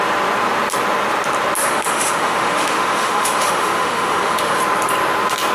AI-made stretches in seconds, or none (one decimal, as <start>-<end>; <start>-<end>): 1.6-4.6